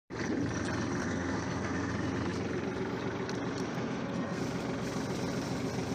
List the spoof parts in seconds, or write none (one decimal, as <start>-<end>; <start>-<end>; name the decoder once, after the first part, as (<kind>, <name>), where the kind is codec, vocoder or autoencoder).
1.0-1.9 (codec, SNAC); 3.7-4.4